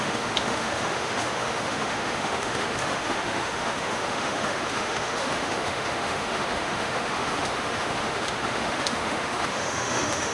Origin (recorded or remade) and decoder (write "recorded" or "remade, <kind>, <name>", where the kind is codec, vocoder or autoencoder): remade, autoencoder, DAC-VAE